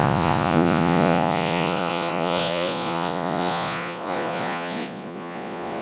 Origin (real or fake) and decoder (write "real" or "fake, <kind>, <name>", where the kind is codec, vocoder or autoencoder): fake, vocoder, Vocos